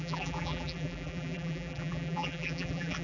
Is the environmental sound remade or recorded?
remade